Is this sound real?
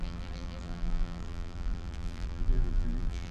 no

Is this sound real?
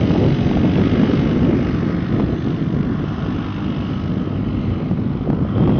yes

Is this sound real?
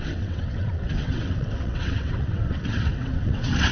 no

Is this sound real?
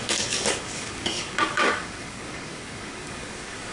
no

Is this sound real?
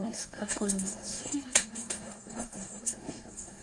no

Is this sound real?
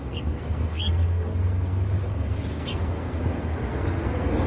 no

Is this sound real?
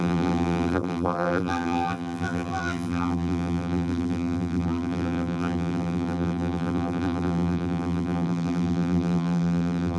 no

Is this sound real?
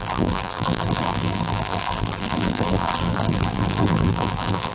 no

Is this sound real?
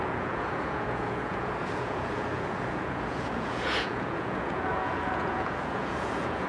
no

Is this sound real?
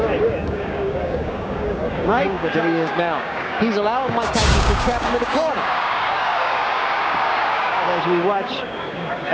no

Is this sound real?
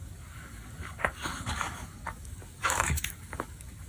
no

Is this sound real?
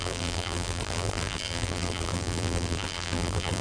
no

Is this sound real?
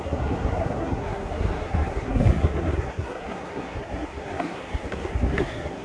no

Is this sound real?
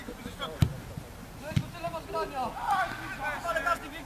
yes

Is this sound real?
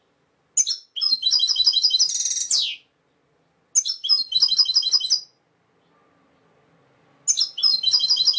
yes